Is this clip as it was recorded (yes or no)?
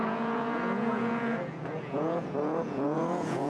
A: no